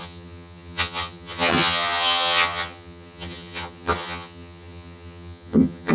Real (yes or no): no